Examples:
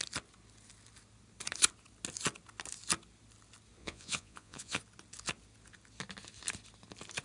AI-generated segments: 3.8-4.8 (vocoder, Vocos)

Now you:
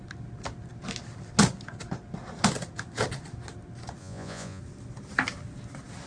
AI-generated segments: 4.0-4.6 (vocoder, Vocos)

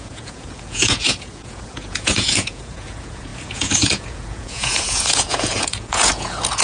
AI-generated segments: 0.0-6.6 (vocoder, Vocos)

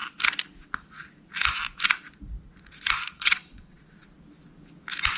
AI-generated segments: 3.1-3.8 (vocoder, Vocos)